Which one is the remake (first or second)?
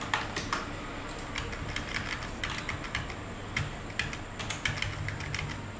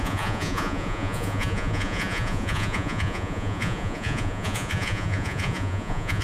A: second